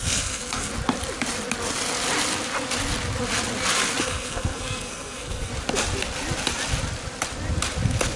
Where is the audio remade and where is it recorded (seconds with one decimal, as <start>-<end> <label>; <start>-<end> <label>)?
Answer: 0.0-0.7 remade; 0.7-4.0 recorded; 4.0-5.5 remade; 5.5-8.2 recorded

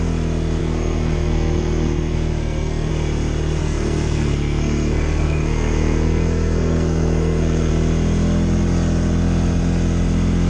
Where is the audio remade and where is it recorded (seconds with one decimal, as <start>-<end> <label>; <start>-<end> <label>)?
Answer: 0.0-0.6 recorded; 0.6-2.9 remade; 2.9-3.6 recorded; 3.6-7.7 remade; 7.7-10.5 recorded

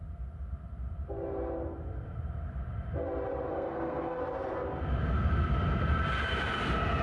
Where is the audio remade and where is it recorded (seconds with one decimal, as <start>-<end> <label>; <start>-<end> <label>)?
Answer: 0.0-3.5 recorded; 3.5-4.2 remade; 4.2-7.0 recorded

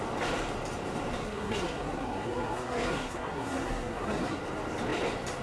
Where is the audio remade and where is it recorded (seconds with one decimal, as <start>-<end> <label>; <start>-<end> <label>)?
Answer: 0.0-1.2 recorded; 1.2-4.4 remade; 4.4-5.4 recorded

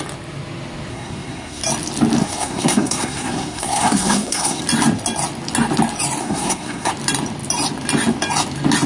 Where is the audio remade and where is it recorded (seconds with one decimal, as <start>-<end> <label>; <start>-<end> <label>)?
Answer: 0.0-0.9 recorded; 0.9-1.6 remade; 1.6-2.2 recorded; 2.2-4.6 remade; 4.6-6.2 recorded; 6.2-6.9 remade; 6.9-8.9 recorded

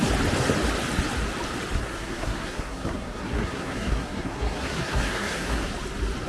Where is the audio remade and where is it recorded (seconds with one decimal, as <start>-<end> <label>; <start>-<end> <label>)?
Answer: 0.0-1.9 recorded; 1.9-5.7 remade; 5.7-6.3 recorded

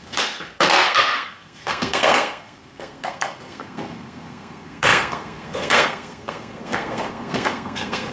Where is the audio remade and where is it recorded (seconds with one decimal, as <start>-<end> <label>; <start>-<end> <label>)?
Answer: 0.0-8.1 remade